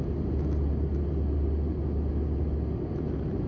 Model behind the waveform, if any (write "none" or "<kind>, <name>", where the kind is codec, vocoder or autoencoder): none